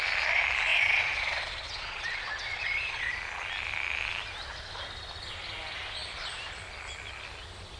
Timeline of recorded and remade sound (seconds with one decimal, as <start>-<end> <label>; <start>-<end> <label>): 0.0-0.7 recorded; 0.7-3.1 remade; 3.1-7.8 recorded